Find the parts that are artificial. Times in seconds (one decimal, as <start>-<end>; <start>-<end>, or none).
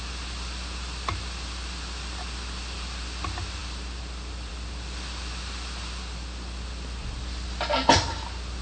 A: none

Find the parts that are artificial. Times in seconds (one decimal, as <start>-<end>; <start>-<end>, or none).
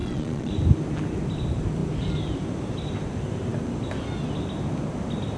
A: 0.0-0.5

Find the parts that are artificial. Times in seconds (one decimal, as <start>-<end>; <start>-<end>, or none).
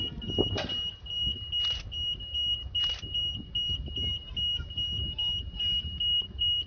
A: none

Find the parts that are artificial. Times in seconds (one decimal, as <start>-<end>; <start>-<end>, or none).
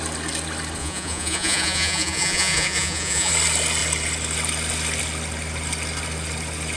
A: 0.8-3.3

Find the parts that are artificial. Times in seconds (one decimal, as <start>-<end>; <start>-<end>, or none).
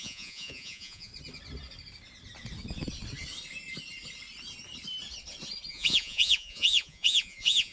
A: 0.0-1.1; 5.7-7.7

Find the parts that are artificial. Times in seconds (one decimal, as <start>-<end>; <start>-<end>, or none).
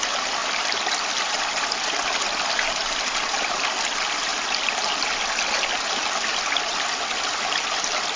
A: none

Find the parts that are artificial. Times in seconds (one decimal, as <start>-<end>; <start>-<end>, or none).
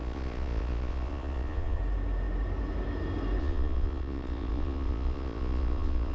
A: 0.0-1.8; 3.4-6.1